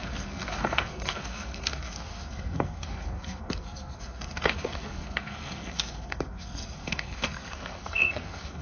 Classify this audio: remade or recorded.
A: remade